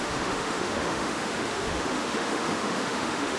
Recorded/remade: remade